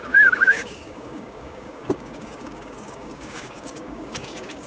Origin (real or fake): fake